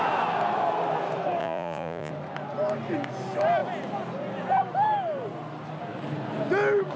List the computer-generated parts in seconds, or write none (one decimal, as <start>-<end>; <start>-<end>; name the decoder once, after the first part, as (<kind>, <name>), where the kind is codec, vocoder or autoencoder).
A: 1.4-2.1 (vocoder, Vocos)